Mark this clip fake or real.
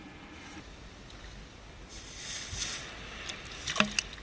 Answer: real